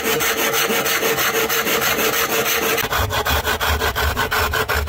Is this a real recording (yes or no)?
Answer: yes